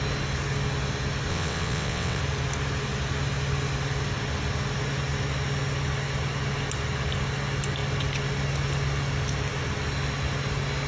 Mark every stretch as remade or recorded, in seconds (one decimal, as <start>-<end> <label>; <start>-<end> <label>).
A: 0.0-1.3 recorded; 1.3-2.2 remade; 2.2-10.9 recorded